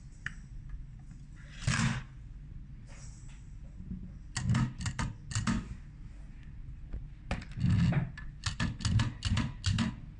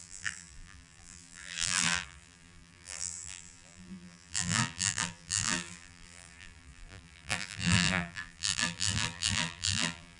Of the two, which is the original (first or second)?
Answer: first